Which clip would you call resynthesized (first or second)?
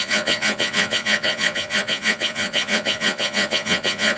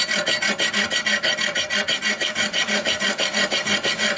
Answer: first